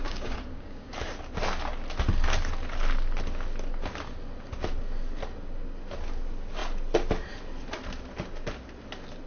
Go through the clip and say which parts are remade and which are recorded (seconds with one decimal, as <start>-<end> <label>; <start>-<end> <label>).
0.0-0.9 remade; 0.9-9.3 recorded